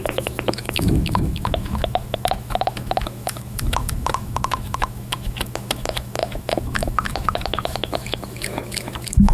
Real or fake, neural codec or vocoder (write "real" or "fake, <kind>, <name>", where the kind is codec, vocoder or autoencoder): fake, autoencoder, DAC-VAE